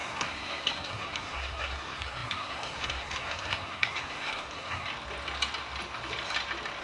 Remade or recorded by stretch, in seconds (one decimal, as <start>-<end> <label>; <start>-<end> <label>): 0.0-4.9 remade; 4.9-6.8 recorded